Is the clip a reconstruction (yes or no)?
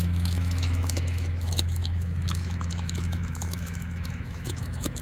yes